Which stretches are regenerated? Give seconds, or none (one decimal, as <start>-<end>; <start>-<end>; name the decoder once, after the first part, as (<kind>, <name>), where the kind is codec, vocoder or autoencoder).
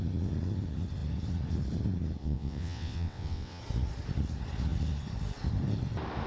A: 2.2-3.6 (vocoder, WaveNeXt)